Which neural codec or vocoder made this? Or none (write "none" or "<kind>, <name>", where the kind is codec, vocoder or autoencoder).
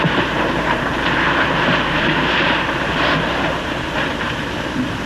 vocoder, BigVGAN v2